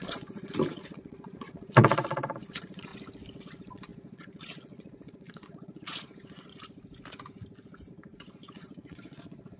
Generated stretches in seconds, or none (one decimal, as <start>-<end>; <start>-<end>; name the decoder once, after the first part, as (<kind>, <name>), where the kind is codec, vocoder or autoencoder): 0.0-2.9 (vocoder, Vocos); 3.4-6.5; 7.9-9.6